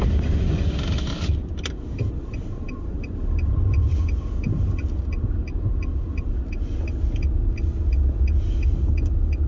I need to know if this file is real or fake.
real